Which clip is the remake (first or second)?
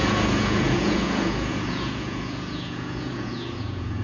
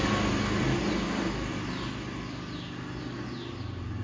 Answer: first